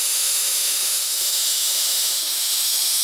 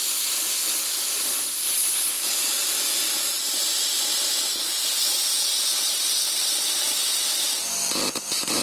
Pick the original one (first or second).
second